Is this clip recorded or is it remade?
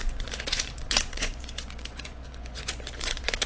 remade